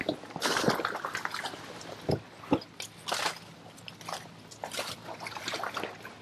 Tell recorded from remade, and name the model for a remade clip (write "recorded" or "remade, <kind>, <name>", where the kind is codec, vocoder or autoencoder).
recorded